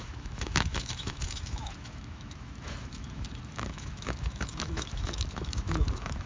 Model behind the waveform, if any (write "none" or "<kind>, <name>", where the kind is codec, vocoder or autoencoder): autoencoder, DAC-VAE